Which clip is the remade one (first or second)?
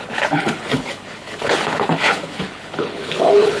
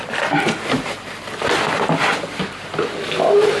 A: first